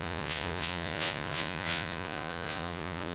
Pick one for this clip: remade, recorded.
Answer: remade